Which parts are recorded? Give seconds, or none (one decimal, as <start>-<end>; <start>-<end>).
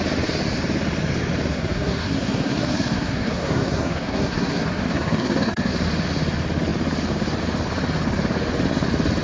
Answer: 0.0-1.5; 5.7-9.2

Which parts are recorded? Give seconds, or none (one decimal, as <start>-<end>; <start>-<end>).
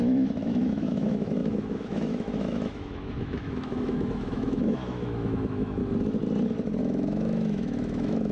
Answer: 5.8-6.8